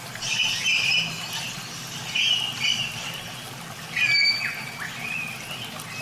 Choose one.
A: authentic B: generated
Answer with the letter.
A